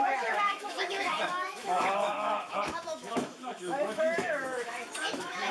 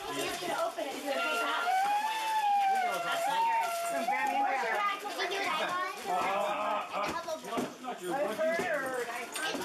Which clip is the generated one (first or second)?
first